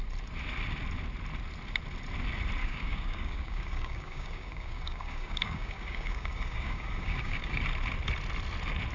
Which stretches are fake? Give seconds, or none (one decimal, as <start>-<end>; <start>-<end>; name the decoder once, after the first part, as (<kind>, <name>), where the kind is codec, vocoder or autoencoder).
2.6-7.6 (codec, DAC)